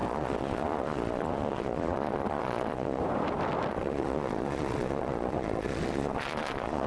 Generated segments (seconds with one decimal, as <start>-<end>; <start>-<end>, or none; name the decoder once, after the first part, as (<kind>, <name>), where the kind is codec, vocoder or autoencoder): 0.0-3.0 (vocoder, Vocos); 3.7-6.9